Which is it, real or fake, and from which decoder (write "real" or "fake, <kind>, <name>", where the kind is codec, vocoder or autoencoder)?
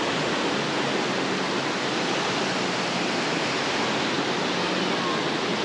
real